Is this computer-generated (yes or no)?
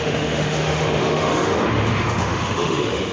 yes